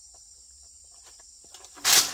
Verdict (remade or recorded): recorded